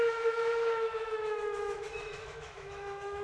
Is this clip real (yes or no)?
no